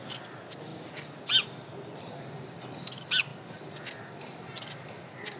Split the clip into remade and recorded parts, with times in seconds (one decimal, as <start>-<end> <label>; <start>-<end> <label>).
0.0-5.4 recorded